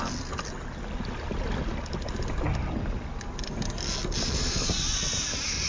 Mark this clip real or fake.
real